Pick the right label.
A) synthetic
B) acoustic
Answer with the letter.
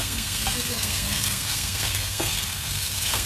A